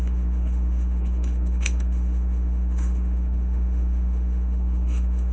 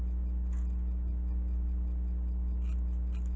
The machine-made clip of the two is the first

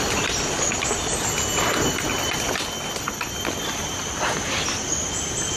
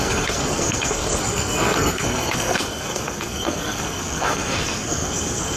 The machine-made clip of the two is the second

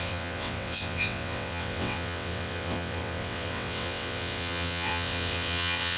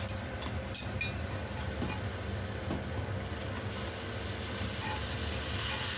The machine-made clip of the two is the first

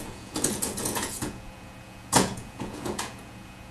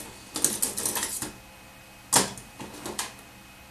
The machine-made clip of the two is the first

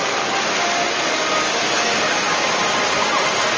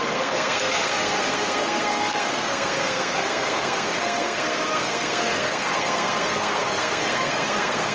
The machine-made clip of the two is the second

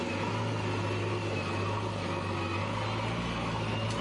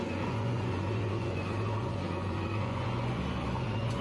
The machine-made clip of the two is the second